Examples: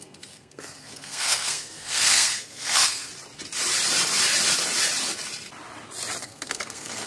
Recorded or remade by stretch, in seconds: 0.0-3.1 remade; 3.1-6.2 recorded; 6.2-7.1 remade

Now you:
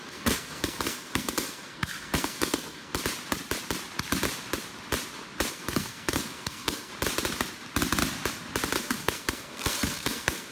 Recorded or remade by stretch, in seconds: 0.0-2.9 remade; 2.9-5.5 recorded; 5.5-6.9 remade; 6.9-8.8 recorded; 8.8-10.5 remade

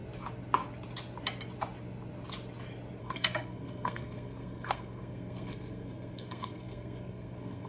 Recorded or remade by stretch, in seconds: 0.0-3.0 recorded; 3.0-7.7 remade

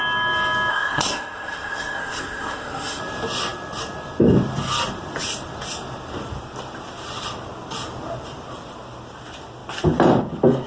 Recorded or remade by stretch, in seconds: 0.0-0.7 recorded; 0.7-3.0 remade; 3.0-10.7 recorded

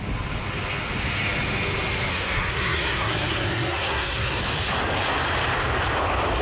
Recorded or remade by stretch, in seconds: 0.0-2.1 recorded; 2.1-4.4 remade; 4.4-6.4 recorded

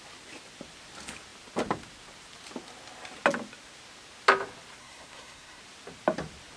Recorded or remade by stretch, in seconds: 0.0-4.8 recorded; 4.8-5.6 remade; 5.6-6.6 recorded